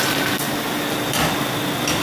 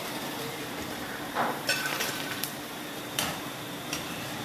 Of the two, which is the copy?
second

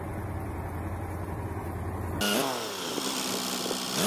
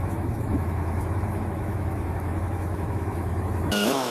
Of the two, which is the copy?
second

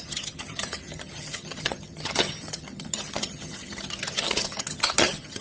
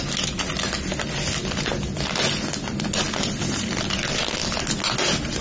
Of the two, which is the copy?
first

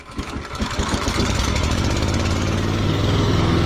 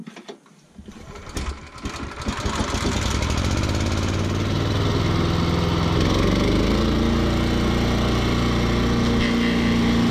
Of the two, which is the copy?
first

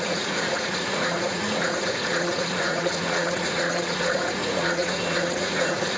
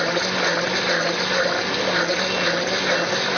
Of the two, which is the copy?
first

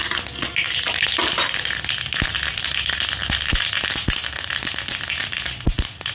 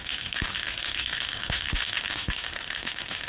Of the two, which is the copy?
second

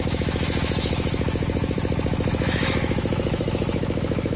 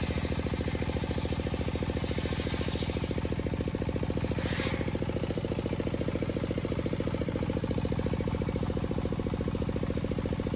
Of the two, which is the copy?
first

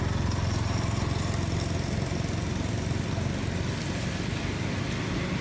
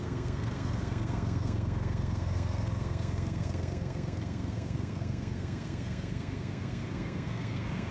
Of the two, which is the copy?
second